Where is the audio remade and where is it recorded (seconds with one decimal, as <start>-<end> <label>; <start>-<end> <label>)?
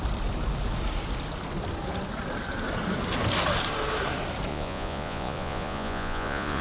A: 0.0-4.5 recorded; 4.5-6.6 remade